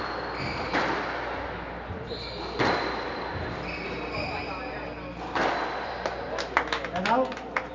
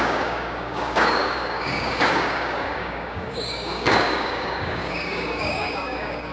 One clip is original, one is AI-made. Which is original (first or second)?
first